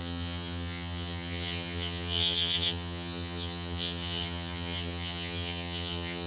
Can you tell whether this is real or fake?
fake